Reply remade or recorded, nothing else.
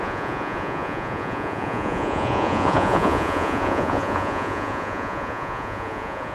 remade